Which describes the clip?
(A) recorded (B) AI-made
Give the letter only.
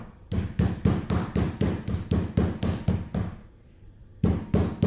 B